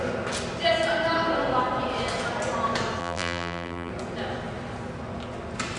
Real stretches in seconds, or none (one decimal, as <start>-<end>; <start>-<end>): 0.0-3.0; 3.9-5.8